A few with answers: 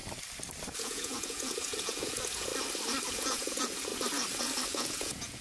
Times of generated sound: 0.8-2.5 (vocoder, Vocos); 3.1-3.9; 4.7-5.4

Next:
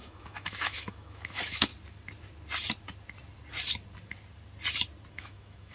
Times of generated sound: 0.0-1.7 (autoencoder, DAC-VAE); 5.1-5.7

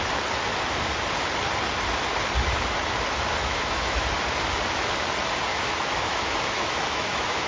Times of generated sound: 3.4-4.1 (autoencoder, DAC-VAE); 5.5-7.5

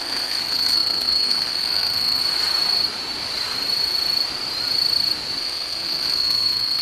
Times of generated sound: 0.0-2.2 (codec, SNAC); 5.4-6.8

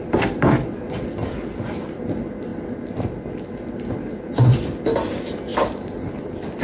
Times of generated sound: 5.5-6.6 (vocoder, BigVGAN v2)

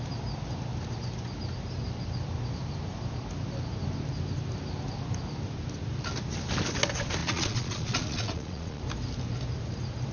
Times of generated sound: 7.2-8.8 (vocoder, Vocos)